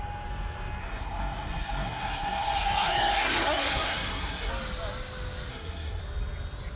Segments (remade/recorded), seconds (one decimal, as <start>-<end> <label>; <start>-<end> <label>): 0.0-0.8 recorded; 0.8-4.5 remade; 4.5-5.5 recorded; 5.5-6.0 remade; 6.0-6.8 recorded